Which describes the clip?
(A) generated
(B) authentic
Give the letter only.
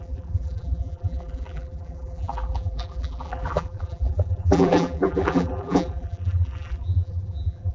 A